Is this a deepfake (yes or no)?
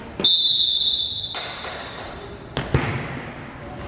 no